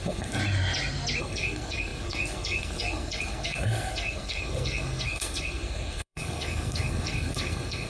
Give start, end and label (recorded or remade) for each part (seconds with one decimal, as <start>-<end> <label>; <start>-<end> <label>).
0.0-0.4 remade; 0.4-1.2 recorded; 1.2-7.9 remade